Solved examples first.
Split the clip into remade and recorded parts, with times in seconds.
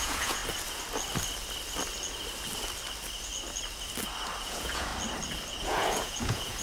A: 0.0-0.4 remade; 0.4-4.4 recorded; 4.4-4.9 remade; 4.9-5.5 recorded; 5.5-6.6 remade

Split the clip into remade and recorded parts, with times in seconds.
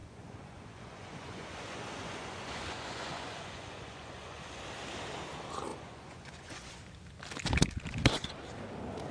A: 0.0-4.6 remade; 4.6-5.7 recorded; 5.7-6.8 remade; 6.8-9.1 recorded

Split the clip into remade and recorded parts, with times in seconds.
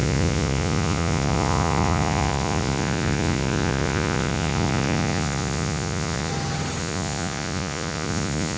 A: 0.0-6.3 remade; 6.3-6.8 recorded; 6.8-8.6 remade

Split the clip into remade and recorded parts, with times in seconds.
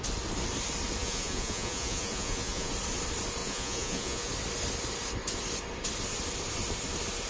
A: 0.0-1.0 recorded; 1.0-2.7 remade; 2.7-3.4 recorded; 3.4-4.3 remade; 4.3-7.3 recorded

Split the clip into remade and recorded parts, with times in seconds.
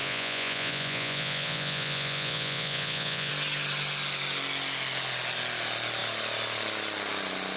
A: 0.0-3.3 remade; 3.3-7.6 recorded